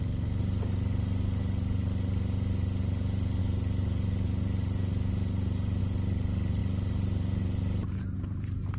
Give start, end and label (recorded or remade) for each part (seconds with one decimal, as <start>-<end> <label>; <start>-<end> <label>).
0.0-8.8 recorded